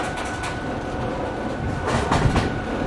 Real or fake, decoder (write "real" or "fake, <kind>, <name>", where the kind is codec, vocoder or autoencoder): real